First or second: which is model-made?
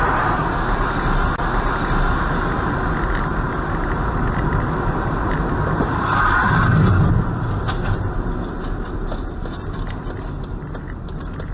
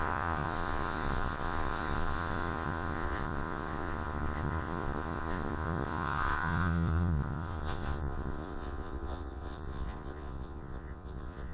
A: second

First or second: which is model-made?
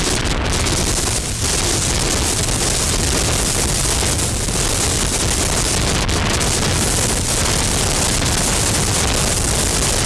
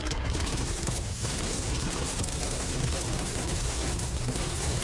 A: second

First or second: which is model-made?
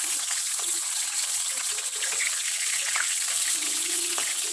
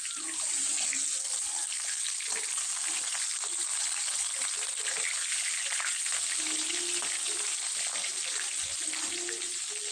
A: first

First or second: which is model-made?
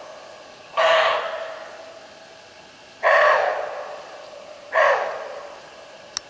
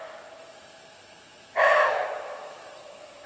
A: second